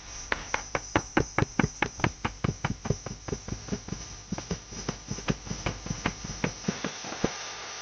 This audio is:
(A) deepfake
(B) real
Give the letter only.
B